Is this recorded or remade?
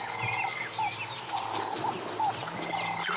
recorded